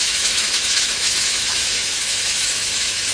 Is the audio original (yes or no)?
no